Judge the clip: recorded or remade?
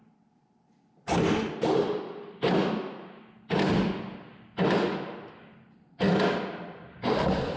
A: recorded